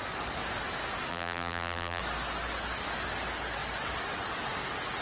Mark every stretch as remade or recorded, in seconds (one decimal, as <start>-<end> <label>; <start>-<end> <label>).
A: 0.0-1.1 recorded; 1.1-2.0 remade; 2.0-5.0 recorded